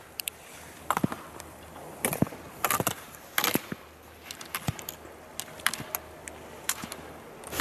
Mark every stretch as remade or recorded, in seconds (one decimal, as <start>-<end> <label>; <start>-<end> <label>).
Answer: 0.0-7.6 recorded